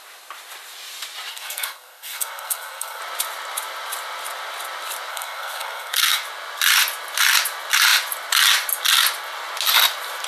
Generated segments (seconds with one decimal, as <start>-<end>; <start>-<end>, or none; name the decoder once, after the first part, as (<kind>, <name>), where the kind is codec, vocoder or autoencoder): 1.3-3.0 (codec, SNAC); 5.1-6.2

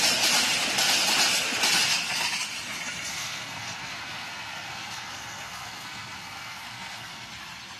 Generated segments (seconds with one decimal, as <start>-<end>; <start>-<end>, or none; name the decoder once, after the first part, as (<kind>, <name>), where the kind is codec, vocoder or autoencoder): 3.1-7.3 (codec, SNAC)

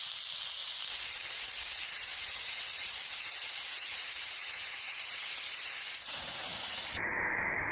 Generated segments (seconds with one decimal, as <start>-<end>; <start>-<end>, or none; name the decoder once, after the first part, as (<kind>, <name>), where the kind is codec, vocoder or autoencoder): 0.6-5.2 (vocoder, BigVGAN v2); 6.5-7.7

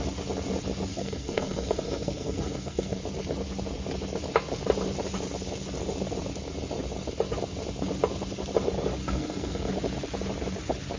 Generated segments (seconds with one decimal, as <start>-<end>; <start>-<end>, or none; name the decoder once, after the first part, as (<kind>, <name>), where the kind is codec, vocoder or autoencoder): 0.9-3.0 (codec, SNAC); 9.0-9.7